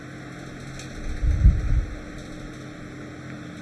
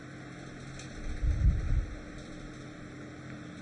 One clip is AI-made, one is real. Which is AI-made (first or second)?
second